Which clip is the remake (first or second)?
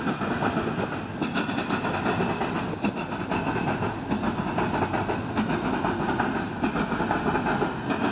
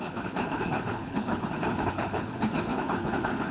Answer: second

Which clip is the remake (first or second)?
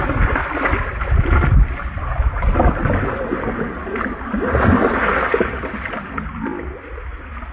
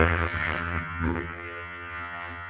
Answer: second